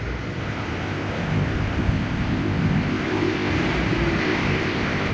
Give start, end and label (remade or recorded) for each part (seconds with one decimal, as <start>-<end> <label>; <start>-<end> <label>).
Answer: 0.0-0.4 recorded; 0.4-3.5 remade; 3.5-4.2 recorded; 4.2-5.1 remade